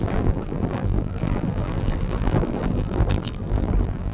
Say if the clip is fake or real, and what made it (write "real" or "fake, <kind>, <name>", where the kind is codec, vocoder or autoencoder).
fake, vocoder, BigVGAN v2